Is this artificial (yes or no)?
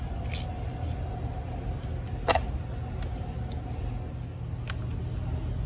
no